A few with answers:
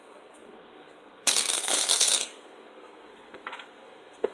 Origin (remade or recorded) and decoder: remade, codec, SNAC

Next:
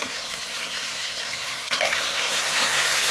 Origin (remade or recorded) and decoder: remade, codec, SNAC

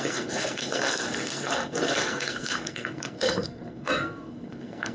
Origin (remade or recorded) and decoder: remade, codec, SNAC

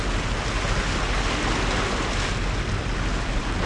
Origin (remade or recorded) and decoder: recorded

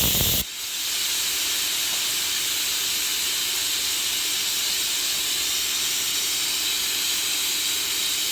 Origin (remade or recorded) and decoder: recorded